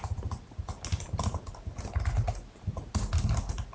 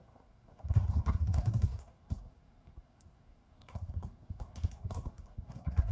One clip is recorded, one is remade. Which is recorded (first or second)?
first